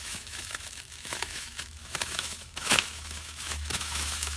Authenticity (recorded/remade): remade